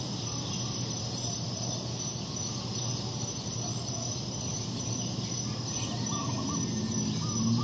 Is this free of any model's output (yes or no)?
yes